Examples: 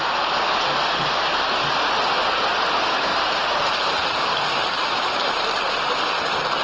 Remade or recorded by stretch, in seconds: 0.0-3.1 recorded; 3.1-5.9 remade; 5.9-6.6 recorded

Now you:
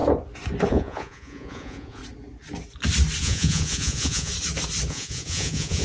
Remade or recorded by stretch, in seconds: 0.0-0.7 recorded; 0.7-2.0 remade; 2.0-3.2 recorded; 3.2-4.3 remade; 4.3-4.9 recorded; 4.9-5.8 remade

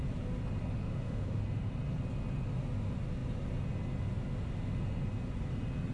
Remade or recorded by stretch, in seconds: 0.0-0.8 recorded; 0.8-1.4 remade; 1.4-5.9 recorded